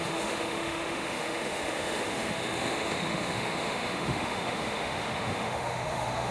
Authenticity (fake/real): fake